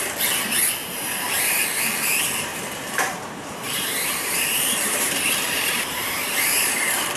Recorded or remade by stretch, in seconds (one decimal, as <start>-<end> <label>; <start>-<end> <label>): 0.0-0.8 recorded; 0.8-1.6 remade; 1.6-2.5 recorded; 2.5-6.7 remade; 6.7-7.2 recorded